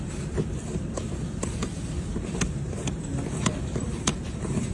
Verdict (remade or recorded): remade